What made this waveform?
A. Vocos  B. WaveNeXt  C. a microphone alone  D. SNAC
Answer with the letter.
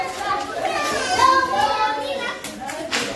C